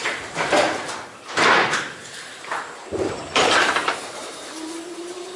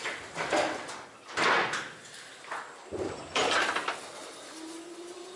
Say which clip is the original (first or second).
second